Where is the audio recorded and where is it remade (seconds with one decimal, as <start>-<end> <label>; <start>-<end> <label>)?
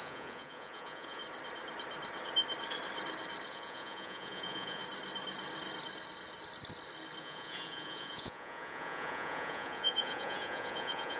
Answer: 0.0-1.2 remade; 1.2-3.5 recorded; 3.5-4.8 remade; 4.8-7.2 recorded; 7.2-11.2 remade